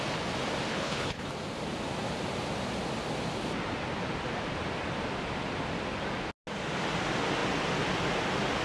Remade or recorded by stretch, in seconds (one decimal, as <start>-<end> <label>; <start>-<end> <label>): 0.0-0.7 recorded; 0.7-1.3 remade; 1.3-8.6 recorded